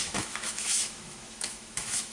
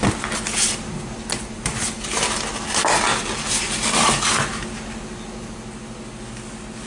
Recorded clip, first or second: second